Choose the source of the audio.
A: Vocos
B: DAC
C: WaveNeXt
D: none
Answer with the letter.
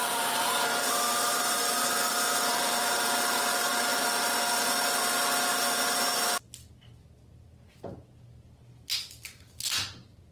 D